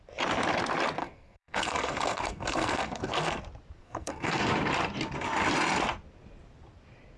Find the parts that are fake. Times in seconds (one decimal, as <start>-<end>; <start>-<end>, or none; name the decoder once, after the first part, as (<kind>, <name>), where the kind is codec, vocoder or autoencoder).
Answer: 1.0-3.4 (codec, SNAC); 3.8-4.5